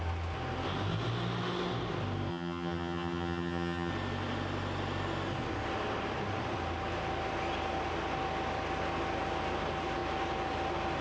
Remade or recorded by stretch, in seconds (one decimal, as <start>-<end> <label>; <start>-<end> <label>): 0.0-2.3 recorded; 2.3-3.9 remade; 3.9-11.0 recorded